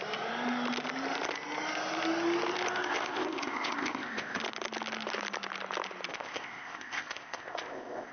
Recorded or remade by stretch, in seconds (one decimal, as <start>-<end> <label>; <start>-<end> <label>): 0.0-2.8 recorded; 2.8-4.4 remade; 4.4-6.1 recorded; 6.1-8.1 remade